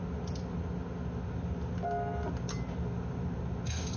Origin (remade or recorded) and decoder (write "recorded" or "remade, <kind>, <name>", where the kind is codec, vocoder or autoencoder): recorded